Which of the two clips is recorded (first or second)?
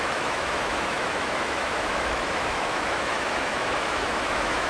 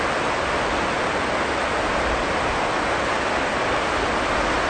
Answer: second